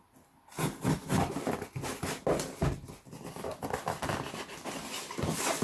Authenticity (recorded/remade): recorded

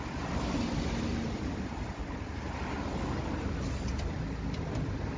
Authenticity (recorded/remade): recorded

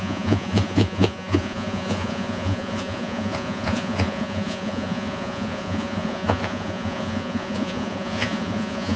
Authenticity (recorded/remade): remade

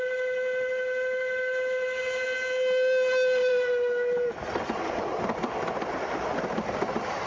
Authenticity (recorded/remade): recorded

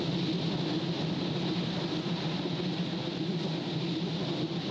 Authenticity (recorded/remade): recorded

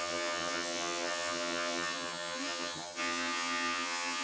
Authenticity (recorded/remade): remade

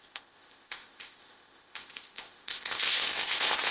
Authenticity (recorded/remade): remade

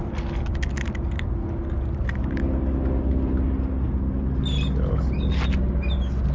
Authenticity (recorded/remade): recorded